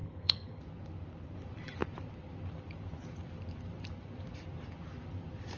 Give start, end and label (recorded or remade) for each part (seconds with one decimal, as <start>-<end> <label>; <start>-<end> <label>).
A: 0.0-0.6 remade; 0.6-5.6 recorded